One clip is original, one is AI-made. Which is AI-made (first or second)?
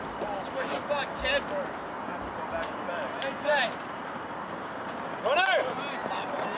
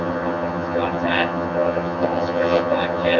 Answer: second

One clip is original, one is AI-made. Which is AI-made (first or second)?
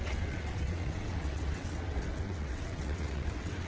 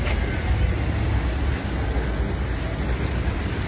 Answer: first